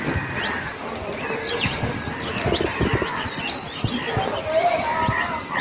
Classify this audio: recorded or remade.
recorded